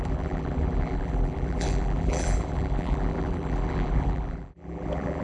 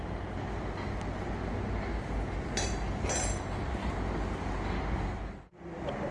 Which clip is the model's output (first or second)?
first